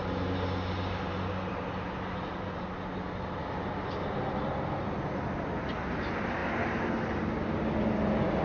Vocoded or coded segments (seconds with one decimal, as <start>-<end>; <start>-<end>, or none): none